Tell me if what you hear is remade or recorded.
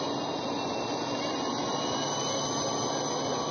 recorded